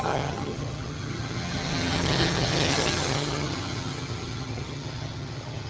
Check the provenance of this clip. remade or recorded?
remade